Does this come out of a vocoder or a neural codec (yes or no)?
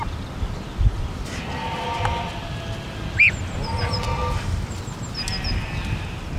no